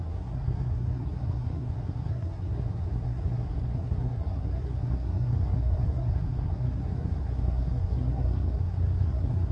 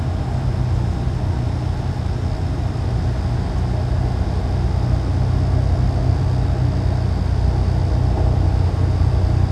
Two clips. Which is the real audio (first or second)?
second